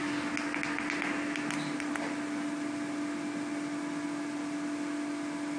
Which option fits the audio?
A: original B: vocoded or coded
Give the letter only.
A